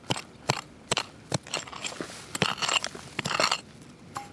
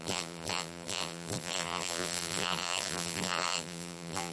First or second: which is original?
first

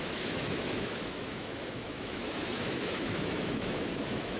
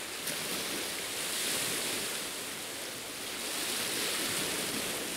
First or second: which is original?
second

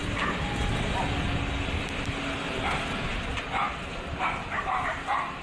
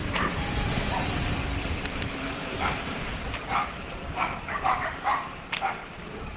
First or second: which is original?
first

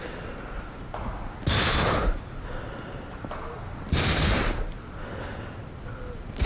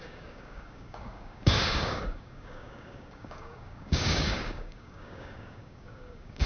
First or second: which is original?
first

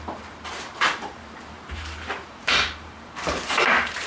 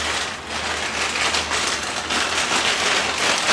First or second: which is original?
second